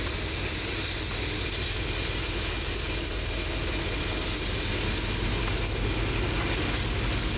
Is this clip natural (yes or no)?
yes